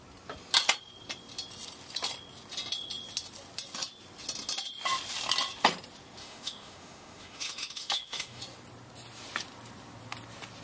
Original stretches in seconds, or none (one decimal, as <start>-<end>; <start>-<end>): 0.0-6.2; 8.4-10.6